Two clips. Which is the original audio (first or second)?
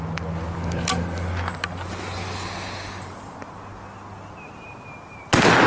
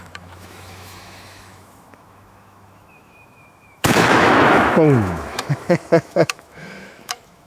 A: first